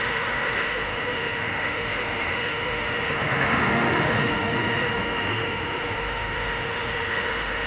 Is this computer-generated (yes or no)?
yes